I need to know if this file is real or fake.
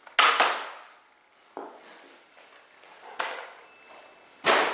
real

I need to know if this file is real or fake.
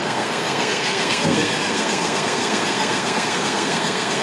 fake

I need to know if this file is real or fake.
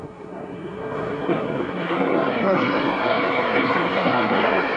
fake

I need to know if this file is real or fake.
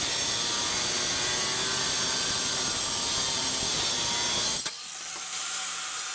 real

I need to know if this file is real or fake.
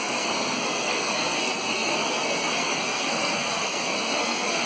fake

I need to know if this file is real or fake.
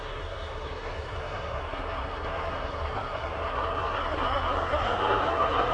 fake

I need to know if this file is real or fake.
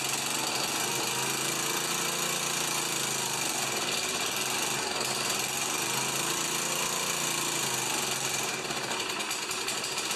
real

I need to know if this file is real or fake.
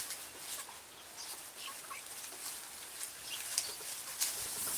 real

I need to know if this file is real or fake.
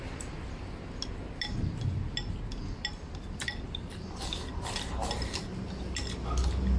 real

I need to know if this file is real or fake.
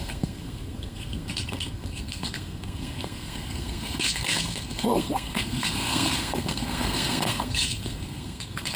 fake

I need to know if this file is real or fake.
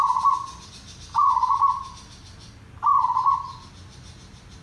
real